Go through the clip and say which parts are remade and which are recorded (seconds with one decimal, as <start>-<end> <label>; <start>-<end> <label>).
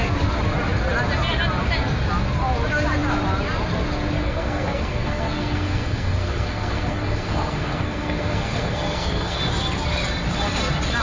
0.0-4.2 recorded; 4.2-9.4 remade; 9.4-11.0 recorded